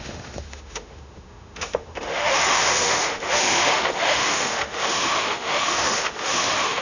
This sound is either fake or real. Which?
fake